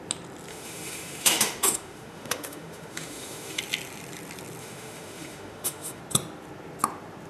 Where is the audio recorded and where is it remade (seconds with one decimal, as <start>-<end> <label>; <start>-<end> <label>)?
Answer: 0.0-0.5 recorded; 0.5-3.6 remade; 3.6-4.6 recorded; 4.6-6.0 remade; 6.0-7.3 recorded